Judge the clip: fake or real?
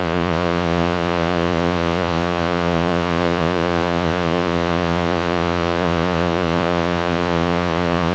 fake